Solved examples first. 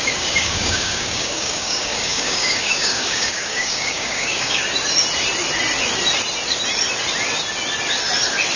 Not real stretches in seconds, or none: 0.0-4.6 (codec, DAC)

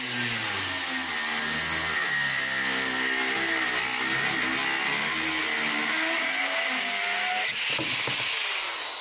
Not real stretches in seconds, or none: none

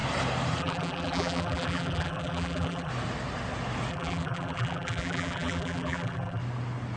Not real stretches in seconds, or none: 0.6-2.9 (vocoder, BigVGAN v2); 3.9-6.4

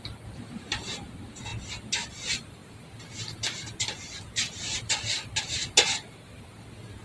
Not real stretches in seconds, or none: none

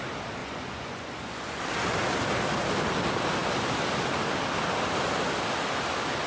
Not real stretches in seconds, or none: 0.4-1.6 (vocoder, Vocos)

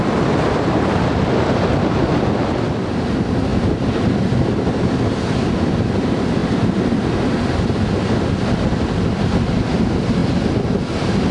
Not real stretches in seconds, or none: none